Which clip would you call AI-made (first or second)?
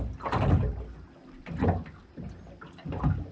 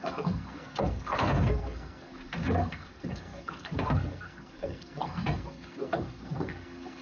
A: second